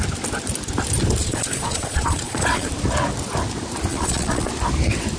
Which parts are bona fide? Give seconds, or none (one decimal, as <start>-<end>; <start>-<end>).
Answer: 0.0-1.2; 2.7-3.9; 4.5-5.2